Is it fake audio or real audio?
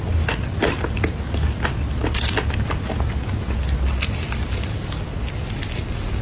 real